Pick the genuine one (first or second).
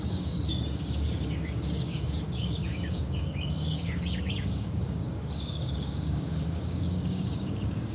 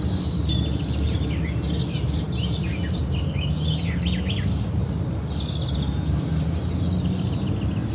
second